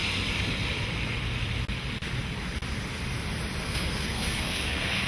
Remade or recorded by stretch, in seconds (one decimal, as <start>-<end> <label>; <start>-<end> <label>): 0.0-3.6 recorded; 3.6-5.1 remade

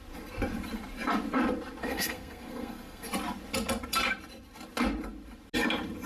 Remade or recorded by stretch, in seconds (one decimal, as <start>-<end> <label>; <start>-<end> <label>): 0.0-1.8 recorded; 1.8-3.1 remade; 3.1-6.1 recorded

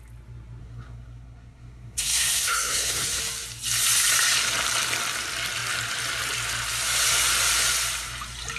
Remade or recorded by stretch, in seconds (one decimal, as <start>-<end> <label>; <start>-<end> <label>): 0.0-0.6 recorded; 0.6-3.2 remade; 3.2-8.6 recorded

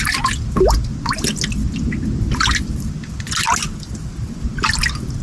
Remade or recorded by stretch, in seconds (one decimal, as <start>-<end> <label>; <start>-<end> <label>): 0.0-5.2 recorded

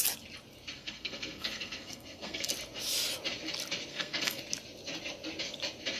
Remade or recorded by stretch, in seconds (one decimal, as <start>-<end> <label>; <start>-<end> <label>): 0.0-0.8 recorded; 0.8-2.5 remade; 2.5-3.9 recorded; 3.9-4.4 remade; 4.4-6.0 recorded

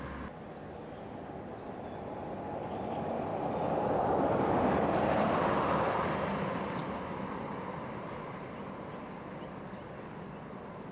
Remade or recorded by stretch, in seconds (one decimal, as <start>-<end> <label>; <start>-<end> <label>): 0.0-10.9 recorded

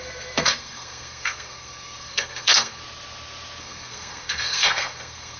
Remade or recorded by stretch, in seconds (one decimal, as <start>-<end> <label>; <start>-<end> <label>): 0.0-2.8 remade; 2.8-3.6 recorded; 3.6-5.4 remade